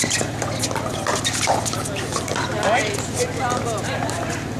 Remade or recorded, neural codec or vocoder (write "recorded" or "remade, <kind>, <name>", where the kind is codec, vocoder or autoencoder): recorded